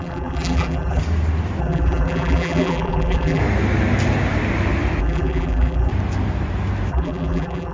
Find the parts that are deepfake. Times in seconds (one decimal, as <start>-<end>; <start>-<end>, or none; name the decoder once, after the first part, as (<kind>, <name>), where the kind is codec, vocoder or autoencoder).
0.0-1.0 (vocoder, BigVGAN v2); 1.6-3.4; 5.0-5.9; 6.9-7.7